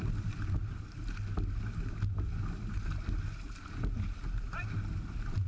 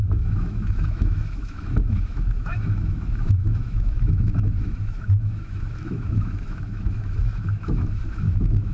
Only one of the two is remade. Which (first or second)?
second